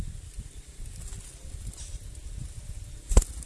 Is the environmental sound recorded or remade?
recorded